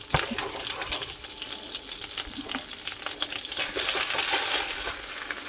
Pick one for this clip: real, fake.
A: real